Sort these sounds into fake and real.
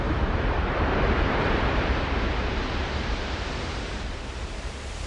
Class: fake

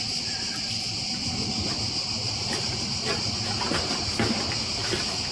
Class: real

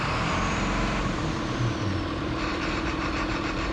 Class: fake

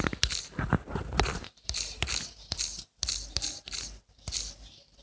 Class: fake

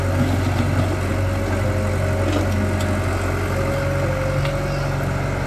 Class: real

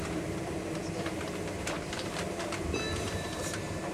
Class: fake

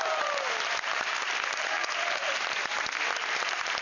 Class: real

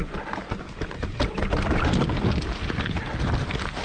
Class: fake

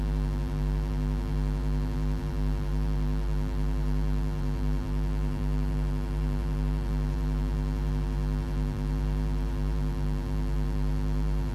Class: fake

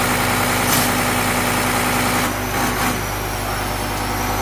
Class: real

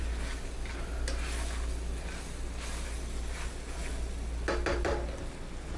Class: real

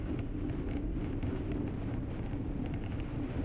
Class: real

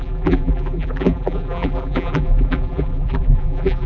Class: fake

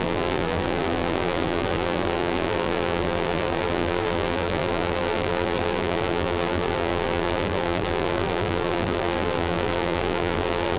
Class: fake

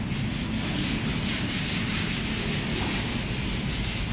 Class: real